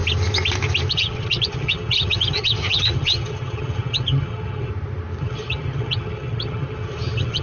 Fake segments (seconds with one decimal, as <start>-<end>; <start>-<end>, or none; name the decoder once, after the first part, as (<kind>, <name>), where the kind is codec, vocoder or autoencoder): 0.9-4.7 (vocoder, HiFi-GAN); 5.2-7.4